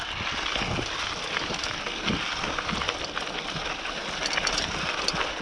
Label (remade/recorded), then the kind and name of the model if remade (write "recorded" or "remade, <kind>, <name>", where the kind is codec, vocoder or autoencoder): recorded